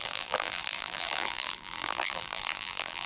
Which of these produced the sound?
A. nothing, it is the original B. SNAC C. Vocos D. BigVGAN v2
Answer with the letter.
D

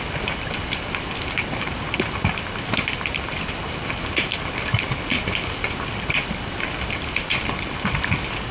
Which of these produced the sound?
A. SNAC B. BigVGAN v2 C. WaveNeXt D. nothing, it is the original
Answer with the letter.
B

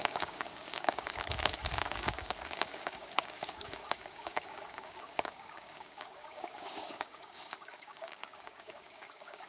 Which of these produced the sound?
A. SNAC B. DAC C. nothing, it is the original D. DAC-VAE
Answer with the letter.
B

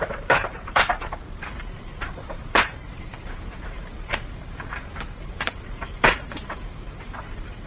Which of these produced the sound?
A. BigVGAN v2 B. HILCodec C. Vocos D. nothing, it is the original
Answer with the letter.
A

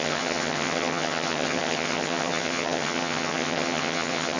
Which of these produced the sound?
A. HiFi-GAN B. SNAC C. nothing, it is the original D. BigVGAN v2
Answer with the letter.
A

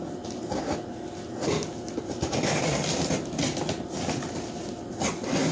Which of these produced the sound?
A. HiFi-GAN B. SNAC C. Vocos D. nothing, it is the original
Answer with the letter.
D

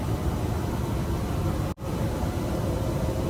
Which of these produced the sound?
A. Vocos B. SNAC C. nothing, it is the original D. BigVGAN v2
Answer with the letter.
C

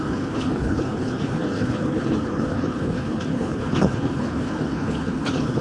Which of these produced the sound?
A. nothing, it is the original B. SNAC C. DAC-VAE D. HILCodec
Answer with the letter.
D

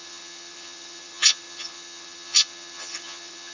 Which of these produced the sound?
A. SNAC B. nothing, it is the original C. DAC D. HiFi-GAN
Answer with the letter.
D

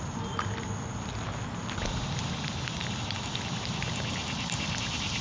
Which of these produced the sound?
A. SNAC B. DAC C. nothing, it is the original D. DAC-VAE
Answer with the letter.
C